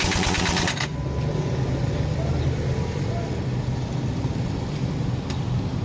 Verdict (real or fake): real